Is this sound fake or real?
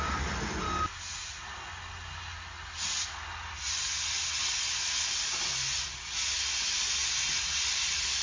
real